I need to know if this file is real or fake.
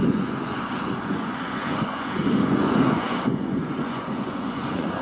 fake